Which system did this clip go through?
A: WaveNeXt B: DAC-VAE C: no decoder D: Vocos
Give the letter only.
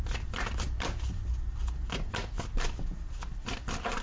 C